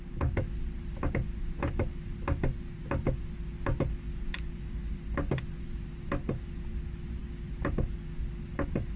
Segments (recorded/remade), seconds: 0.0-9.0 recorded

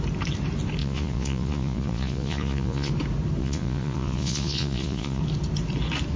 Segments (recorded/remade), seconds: 0.0-0.8 recorded; 0.8-2.9 remade; 2.9-3.4 recorded; 3.4-5.2 remade; 5.2-6.2 recorded

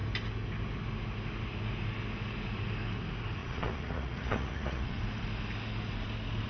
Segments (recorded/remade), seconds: 0.0-3.4 recorded; 3.4-5.0 remade; 5.0-6.5 recorded

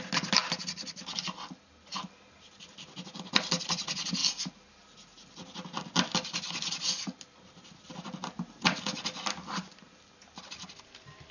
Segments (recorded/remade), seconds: 0.0-11.3 recorded